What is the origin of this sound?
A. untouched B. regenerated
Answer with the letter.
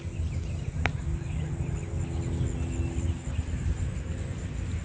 A